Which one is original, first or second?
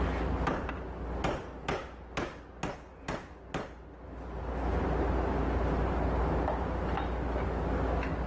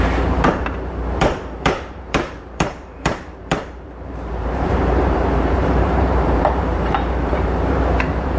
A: first